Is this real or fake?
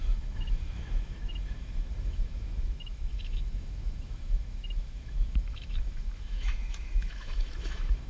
fake